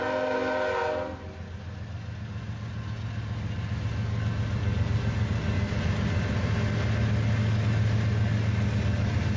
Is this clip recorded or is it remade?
recorded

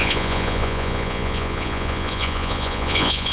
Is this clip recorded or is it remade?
remade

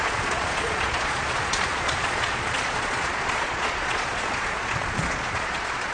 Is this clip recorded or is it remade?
remade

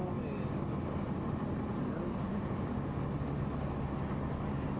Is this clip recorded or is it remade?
recorded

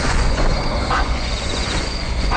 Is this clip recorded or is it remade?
remade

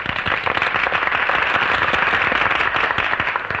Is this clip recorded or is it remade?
recorded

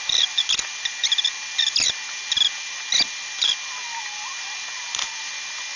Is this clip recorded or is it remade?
recorded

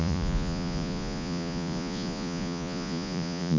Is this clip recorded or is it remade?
remade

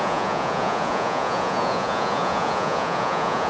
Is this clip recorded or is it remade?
remade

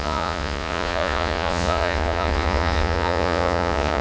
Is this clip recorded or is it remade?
remade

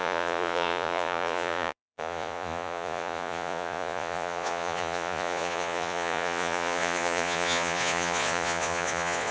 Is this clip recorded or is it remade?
remade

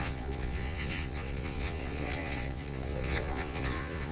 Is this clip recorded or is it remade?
remade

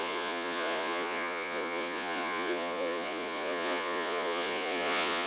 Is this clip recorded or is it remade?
remade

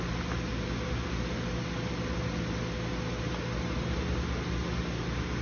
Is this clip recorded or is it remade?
recorded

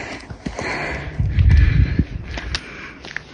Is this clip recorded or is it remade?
recorded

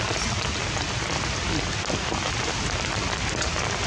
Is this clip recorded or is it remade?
recorded